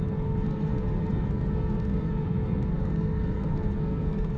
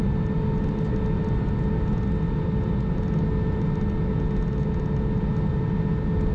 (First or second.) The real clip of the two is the second